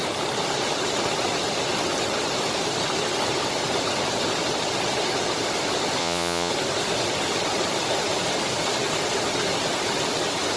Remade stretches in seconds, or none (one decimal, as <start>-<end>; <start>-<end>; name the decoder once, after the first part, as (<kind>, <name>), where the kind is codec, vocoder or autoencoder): 6.0-6.5 (vocoder, Vocos)